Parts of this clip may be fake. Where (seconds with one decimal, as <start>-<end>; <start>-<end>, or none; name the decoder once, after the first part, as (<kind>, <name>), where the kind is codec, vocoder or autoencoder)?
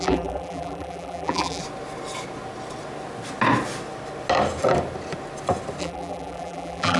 0.0-1.6 (vocoder, BigVGAN v2); 5.8-7.0